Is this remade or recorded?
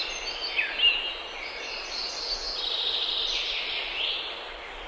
recorded